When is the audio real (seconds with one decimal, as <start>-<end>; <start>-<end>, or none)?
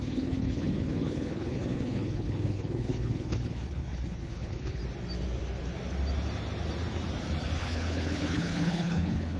4.8-7.6